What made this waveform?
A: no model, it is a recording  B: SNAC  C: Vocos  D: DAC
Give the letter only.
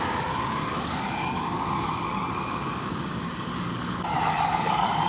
D